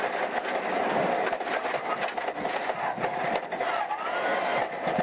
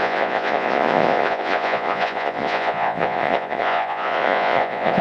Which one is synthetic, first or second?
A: second